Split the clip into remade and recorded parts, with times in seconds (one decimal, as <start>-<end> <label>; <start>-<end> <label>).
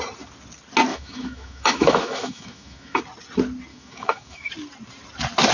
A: 0.0-0.9 recorded; 0.9-3.0 remade; 3.0-3.7 recorded; 3.7-4.5 remade; 4.5-5.5 recorded